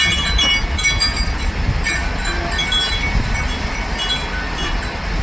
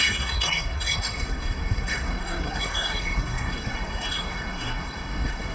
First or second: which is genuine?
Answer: first